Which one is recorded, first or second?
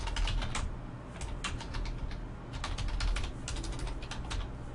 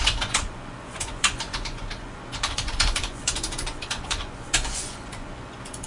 first